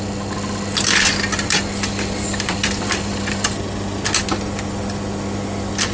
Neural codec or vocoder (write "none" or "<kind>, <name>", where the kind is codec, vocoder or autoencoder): none